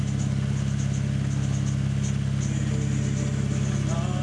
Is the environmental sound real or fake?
real